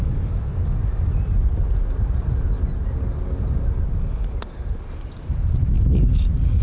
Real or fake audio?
real